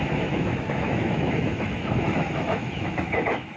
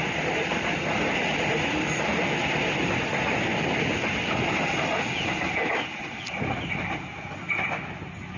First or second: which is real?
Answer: second